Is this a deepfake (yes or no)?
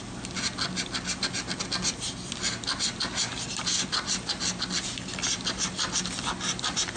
no